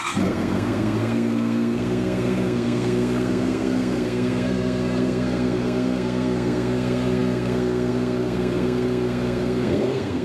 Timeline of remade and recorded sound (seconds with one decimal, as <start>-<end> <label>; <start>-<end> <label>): 0.0-10.2 remade